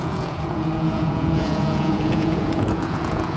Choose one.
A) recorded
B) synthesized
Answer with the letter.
B